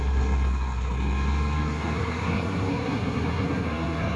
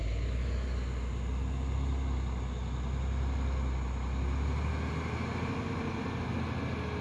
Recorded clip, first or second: second